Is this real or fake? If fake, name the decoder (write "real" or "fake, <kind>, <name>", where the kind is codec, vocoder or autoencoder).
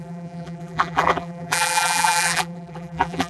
fake, vocoder, BigVGAN v2